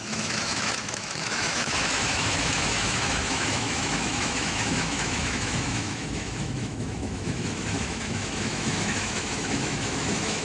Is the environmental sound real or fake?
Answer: fake